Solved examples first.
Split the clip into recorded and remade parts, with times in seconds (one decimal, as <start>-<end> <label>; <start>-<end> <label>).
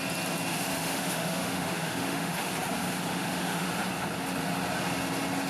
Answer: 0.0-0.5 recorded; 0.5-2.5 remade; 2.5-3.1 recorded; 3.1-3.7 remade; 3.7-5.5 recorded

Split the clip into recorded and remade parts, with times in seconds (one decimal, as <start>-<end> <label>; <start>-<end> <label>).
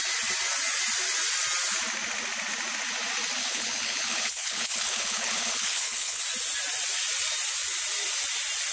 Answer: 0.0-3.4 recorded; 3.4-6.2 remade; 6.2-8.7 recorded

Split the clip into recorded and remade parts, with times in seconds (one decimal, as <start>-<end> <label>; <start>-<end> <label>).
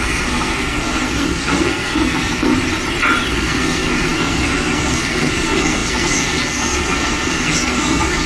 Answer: 0.0-2.5 remade; 2.5-3.3 recorded; 3.3-8.3 remade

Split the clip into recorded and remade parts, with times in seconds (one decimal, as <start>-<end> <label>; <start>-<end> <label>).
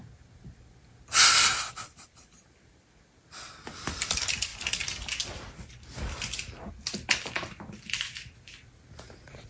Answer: 0.0-9.5 recorded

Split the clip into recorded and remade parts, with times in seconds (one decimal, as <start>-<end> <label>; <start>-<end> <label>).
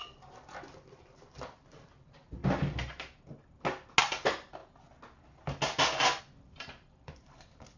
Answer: 0.0-0.7 recorded; 0.7-2.4 remade; 2.4-4.0 recorded; 4.0-4.6 remade; 4.6-6.2 recorded; 6.2-7.8 remade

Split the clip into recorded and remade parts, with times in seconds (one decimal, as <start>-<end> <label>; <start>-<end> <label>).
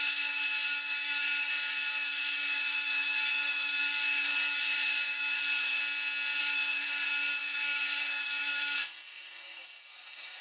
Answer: 0.0-5.8 remade; 5.8-6.4 recorded; 6.4-10.4 remade